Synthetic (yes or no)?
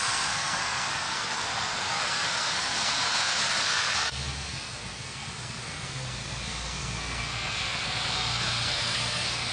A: yes